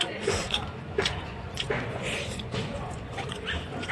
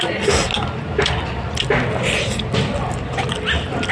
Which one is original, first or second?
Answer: second